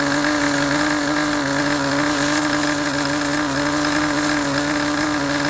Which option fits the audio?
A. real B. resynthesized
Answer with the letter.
A